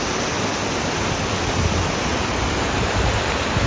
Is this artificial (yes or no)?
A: no